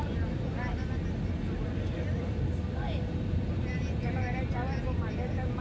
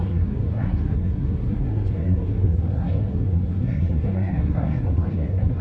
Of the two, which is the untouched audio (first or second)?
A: first